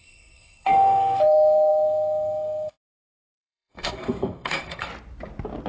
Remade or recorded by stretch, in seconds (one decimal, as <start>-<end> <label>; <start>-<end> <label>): 0.0-4.9 remade; 4.9-5.7 recorded